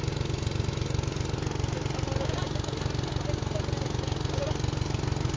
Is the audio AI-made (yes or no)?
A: no